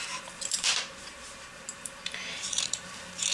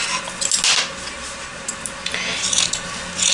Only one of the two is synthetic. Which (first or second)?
first